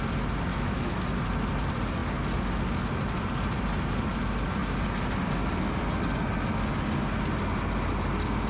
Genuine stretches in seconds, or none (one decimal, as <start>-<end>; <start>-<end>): 0.0-0.5; 1.0-8.5